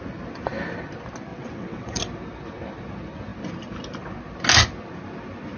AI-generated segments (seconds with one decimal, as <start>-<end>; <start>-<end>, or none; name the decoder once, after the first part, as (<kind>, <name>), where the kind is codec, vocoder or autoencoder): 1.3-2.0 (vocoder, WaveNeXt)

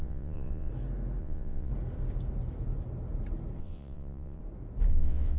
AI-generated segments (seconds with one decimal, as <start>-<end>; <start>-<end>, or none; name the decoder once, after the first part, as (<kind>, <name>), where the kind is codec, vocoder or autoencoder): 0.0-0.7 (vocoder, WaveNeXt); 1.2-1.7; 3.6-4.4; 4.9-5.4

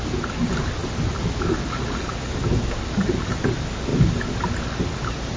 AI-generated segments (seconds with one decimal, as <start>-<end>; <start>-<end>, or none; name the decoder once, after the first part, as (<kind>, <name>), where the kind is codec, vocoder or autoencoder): none